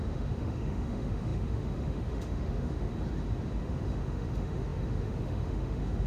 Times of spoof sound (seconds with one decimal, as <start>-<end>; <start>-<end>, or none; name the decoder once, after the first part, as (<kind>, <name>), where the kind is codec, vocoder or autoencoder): 0.0-2.9 (autoencoder, DAC-VAE); 3.6-6.1